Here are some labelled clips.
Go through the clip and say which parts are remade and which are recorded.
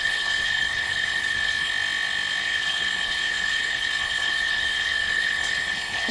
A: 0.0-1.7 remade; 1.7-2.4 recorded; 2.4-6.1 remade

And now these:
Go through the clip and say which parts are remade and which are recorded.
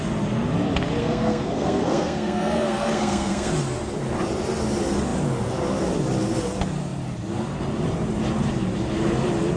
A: 0.0-1.0 recorded; 1.0-3.5 remade; 3.5-9.6 recorded